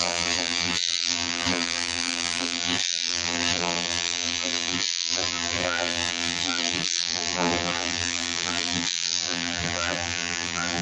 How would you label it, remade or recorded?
remade